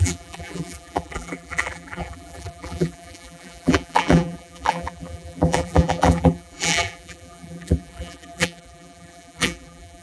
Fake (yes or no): yes